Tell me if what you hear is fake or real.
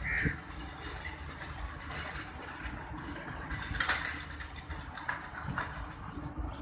real